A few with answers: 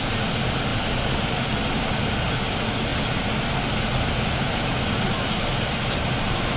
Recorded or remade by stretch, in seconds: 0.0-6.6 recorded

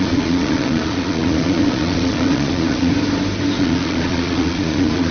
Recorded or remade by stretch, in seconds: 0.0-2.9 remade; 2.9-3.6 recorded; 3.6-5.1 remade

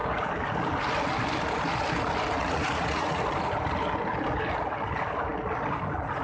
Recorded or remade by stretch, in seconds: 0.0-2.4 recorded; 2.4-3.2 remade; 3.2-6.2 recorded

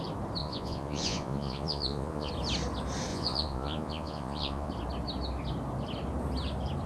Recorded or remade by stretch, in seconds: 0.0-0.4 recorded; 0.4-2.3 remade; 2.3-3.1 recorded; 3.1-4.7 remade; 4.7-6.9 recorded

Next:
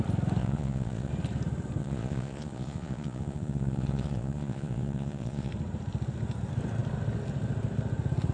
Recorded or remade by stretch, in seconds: 0.0-0.4 recorded; 0.4-1.1 remade; 1.1-1.8 recorded; 1.8-5.5 remade; 5.5-8.3 recorded

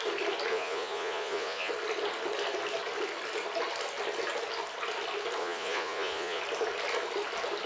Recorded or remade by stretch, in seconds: 0.0-0.5 recorded; 0.5-1.7 remade; 1.7-5.4 recorded; 5.4-6.4 remade; 6.4-7.7 recorded